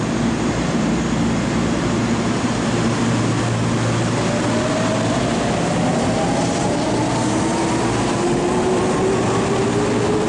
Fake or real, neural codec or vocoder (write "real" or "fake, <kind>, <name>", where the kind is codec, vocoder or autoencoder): real